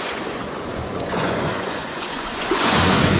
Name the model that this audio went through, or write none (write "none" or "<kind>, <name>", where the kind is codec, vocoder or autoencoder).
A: vocoder, Vocos